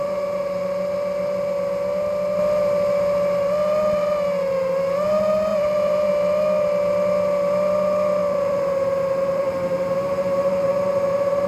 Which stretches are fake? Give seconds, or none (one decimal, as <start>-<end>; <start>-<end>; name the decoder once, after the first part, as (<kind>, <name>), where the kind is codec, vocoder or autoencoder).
5.5-6.1 (vocoder, BigVGAN v2); 8.2-11.5